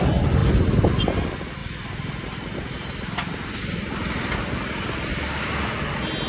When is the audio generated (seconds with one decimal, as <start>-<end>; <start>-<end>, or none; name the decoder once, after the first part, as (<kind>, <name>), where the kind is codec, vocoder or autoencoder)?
none

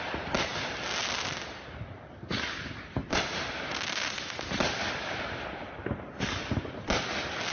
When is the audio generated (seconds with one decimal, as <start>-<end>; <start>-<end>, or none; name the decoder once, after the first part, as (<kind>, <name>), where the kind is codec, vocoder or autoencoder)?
3.0-3.6 (vocoder, BigVGAN v2)

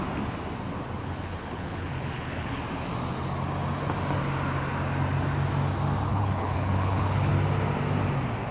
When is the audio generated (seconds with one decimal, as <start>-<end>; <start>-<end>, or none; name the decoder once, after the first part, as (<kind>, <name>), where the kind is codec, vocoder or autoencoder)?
1.0-2.6 (codec, HILCodec); 6.1-7.3

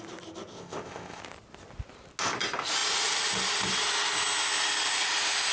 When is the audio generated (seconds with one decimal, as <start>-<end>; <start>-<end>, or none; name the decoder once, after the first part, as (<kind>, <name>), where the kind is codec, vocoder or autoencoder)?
0.5-1.2 (codec, ZipCodec)

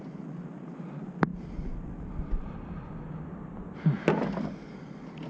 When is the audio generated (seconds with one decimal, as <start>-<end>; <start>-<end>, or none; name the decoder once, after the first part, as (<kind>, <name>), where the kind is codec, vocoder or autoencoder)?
none

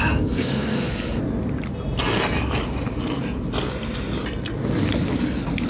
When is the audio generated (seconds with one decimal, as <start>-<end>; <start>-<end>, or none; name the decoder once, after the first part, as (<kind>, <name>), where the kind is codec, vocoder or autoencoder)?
0.0-1.2 (codec, SNAC)

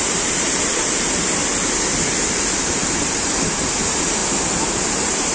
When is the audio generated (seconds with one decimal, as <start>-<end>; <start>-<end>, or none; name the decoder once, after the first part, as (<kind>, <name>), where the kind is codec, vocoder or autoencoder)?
0.0-1.4 (vocoder, BigVGAN v2); 2.1-4.2; 4.8-5.3